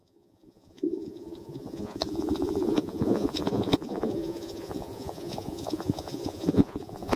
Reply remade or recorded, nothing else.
remade